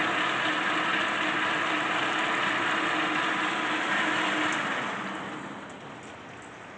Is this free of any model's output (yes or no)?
yes